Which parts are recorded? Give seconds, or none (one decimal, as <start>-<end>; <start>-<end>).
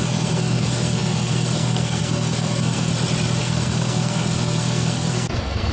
2.9-3.4